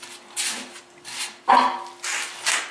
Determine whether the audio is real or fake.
real